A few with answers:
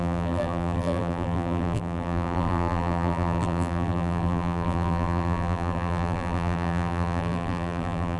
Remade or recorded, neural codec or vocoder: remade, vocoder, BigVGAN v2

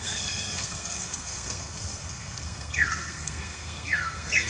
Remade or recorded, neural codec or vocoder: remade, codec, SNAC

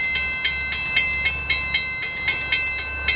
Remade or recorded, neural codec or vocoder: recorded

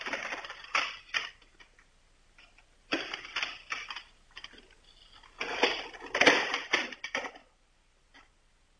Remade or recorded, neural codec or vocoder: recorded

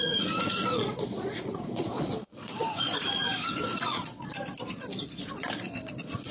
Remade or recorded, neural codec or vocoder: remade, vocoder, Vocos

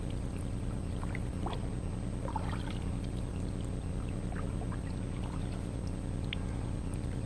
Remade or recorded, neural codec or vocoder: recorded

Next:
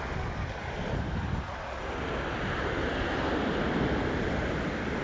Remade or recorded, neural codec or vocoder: recorded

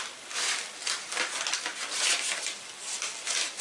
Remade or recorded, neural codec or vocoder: recorded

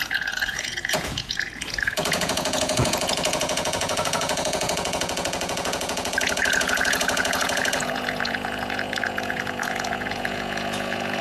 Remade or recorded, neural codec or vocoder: remade, vocoder, Vocos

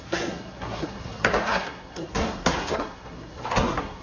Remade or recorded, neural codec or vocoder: remade, codec, SNAC